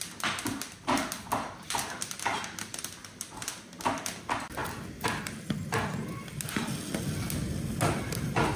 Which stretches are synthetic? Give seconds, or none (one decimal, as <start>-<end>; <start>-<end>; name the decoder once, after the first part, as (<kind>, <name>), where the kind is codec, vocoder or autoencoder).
none